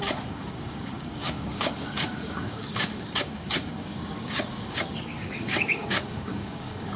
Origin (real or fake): fake